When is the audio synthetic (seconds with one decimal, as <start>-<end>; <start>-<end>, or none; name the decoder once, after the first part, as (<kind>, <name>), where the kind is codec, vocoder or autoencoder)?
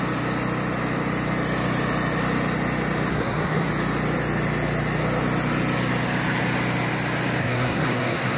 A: 3.1-3.7 (codec, SNAC); 7.4-8.4